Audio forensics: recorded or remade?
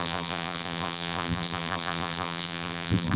remade